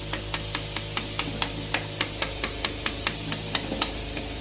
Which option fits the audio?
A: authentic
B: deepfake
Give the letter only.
A